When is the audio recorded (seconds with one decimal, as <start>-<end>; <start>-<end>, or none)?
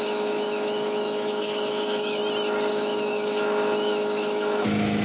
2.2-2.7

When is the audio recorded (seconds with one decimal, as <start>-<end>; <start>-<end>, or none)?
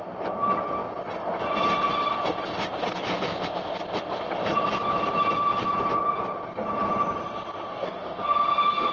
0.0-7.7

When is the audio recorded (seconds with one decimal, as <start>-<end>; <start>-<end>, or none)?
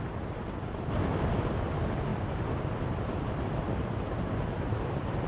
0.0-5.3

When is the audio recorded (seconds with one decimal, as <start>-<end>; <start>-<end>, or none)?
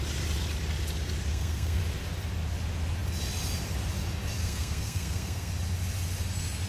0.0-1.3; 1.8-4.4; 5.5-6.7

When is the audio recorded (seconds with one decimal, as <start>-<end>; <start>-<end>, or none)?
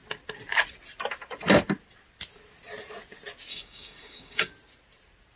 0.0-3.5; 4.5-5.4